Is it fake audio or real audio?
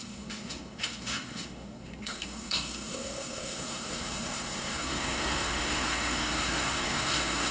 fake